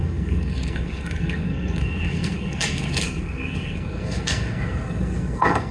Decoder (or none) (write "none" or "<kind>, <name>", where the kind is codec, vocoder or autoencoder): codec, SNAC